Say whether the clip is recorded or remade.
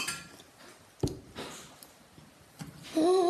recorded